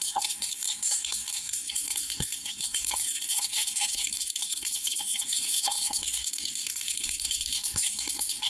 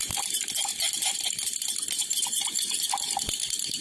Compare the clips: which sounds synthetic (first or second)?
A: first